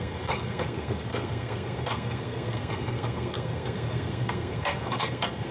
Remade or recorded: remade